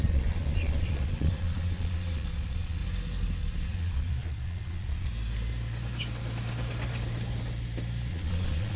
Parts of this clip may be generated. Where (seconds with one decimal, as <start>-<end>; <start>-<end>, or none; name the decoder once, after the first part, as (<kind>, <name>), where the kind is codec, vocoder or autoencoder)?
0.0-2.8 (vocoder, Vocos); 3.4-5.1; 8.1-8.8